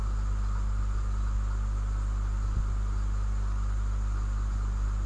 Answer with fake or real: real